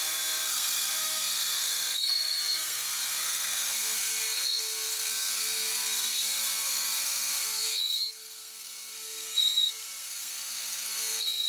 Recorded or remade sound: remade